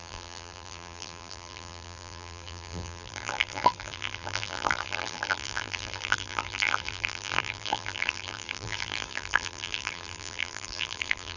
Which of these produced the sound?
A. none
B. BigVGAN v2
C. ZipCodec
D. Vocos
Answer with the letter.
B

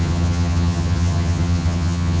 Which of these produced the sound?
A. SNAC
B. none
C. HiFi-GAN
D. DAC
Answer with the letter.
C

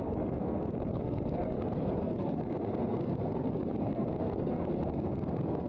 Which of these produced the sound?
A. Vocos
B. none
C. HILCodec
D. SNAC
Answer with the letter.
D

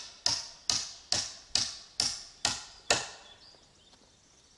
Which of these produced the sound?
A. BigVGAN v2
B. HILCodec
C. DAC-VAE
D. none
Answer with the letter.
D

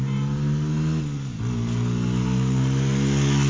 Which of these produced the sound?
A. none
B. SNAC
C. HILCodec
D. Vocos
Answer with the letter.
A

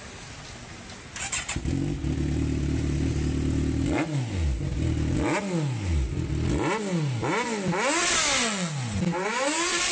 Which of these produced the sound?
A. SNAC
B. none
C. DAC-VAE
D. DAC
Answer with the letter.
B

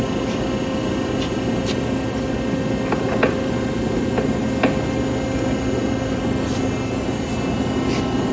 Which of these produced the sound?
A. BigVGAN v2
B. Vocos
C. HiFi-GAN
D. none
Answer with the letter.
D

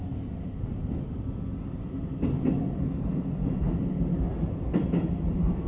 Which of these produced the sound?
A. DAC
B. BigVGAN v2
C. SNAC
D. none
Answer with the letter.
D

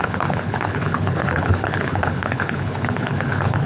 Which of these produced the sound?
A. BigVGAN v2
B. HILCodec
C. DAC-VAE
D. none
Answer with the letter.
B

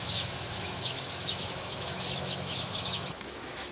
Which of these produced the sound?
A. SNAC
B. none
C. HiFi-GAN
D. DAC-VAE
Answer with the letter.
D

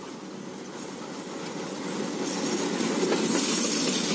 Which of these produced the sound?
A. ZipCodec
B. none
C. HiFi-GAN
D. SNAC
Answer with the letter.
B